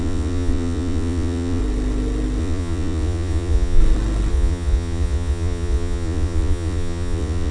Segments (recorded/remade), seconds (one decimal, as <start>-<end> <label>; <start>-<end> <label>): 0.0-1.6 remade; 1.6-2.4 recorded; 2.4-3.8 remade; 3.8-4.3 recorded; 4.3-7.5 remade